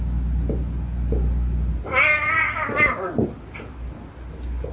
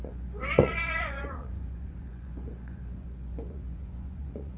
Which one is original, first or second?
first